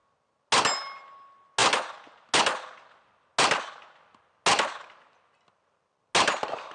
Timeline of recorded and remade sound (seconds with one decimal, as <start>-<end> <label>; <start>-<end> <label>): 0.0-6.7 recorded